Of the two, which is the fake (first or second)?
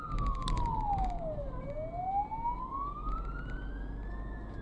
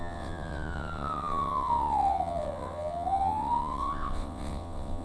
second